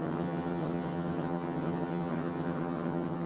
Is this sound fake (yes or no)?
yes